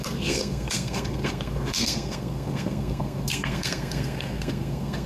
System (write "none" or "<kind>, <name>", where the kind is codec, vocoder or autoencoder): codec, SNAC